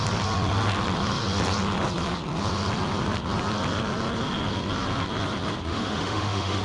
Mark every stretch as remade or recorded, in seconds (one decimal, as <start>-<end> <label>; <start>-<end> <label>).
0.0-5.7 recorded; 5.7-6.6 remade